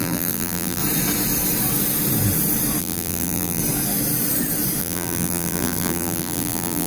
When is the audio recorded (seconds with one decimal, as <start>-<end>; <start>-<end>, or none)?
0.8-2.8; 3.6-4.8